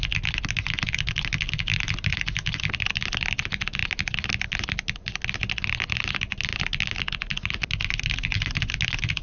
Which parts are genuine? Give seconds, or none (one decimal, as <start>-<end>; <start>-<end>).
0.0-9.2